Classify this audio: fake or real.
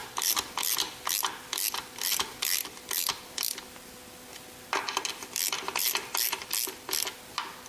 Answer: real